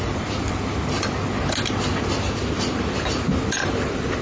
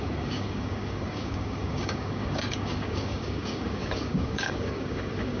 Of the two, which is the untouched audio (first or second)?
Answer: first